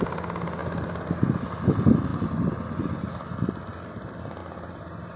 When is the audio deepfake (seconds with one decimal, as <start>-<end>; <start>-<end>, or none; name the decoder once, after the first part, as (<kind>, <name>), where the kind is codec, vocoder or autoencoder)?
none